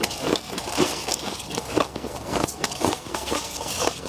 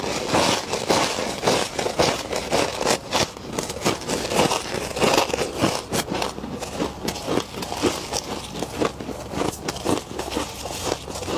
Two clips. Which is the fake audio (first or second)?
first